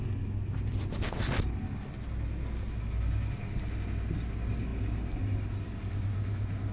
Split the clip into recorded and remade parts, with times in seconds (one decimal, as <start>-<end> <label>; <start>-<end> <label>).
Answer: 0.0-6.7 recorded